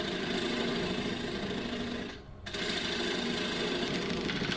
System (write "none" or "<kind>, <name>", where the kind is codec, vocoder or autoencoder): none